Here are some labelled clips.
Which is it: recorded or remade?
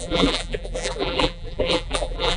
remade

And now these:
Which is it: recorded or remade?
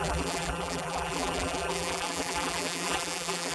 remade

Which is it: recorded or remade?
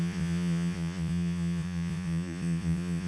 remade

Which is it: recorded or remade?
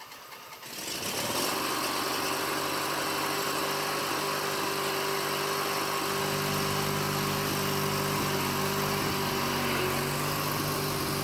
recorded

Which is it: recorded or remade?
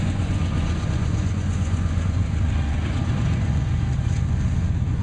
remade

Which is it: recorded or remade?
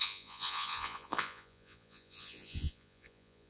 remade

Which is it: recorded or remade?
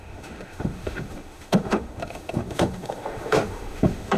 remade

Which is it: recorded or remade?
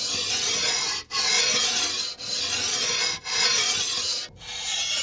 recorded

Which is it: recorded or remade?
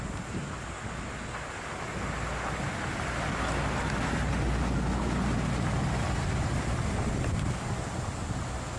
recorded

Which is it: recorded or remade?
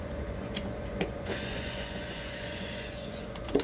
remade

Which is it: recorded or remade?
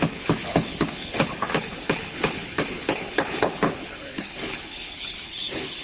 remade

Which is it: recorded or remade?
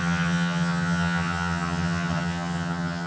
remade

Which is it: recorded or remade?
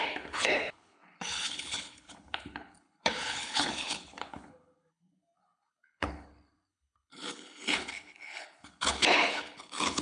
remade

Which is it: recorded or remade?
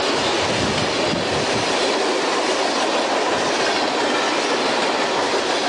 recorded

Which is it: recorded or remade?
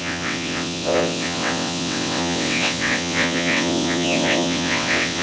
remade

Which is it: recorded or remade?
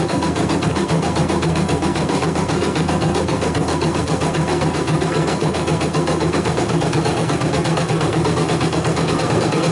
remade